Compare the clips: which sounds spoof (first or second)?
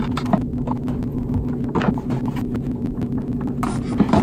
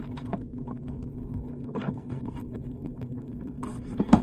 second